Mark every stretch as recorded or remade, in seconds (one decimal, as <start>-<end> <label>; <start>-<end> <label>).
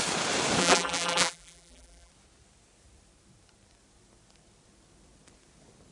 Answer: 0.0-0.6 recorded; 0.6-2.1 remade; 2.1-5.9 recorded